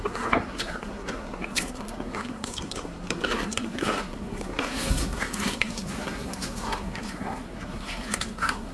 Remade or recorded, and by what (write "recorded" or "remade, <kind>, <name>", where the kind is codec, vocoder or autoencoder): remade, codec, SNAC